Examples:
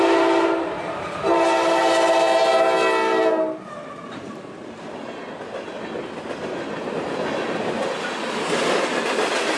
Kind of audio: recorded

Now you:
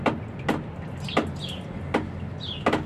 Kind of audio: recorded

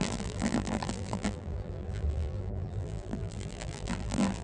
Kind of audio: remade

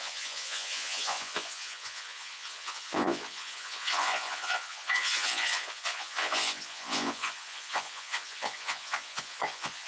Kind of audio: remade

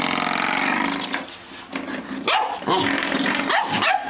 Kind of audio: recorded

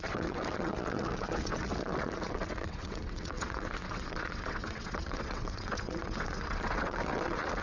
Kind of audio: remade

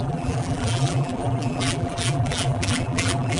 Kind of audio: remade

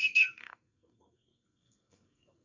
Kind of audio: remade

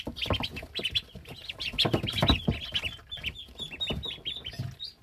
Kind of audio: recorded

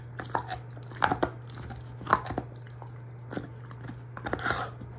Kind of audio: recorded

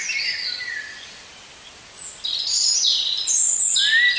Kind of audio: recorded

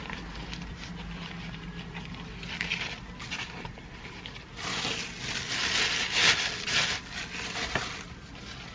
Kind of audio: recorded